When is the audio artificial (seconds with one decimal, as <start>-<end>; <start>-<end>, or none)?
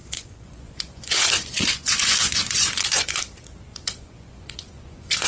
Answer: 0.0-3.2; 3.7-5.3